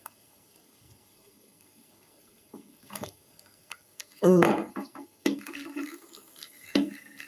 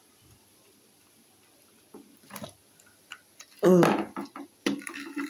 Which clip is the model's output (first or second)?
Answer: first